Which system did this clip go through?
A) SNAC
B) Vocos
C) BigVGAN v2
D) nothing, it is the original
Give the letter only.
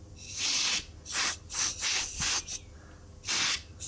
D